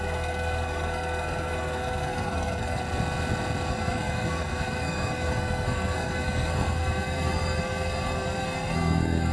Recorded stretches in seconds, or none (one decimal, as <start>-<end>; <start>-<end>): 2.8-3.7

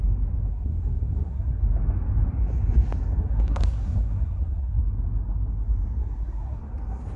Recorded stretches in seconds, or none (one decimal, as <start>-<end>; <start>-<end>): 0.0-0.5; 1.6-3.2; 4.8-6.0; 6.6-7.2

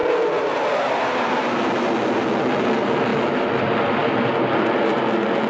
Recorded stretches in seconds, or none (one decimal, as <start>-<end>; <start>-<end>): 0.0-3.1; 3.6-5.5